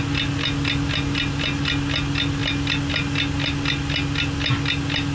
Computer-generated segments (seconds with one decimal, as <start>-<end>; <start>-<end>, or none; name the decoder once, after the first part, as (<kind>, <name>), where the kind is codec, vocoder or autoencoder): none